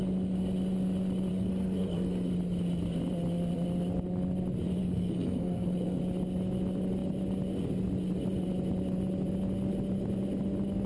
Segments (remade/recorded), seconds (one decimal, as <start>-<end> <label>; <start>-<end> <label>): 0.0-1.3 recorded; 1.3-2.3 remade; 2.3-4.8 recorded; 4.8-6.0 remade; 6.0-10.9 recorded